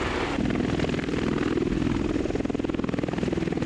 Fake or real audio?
real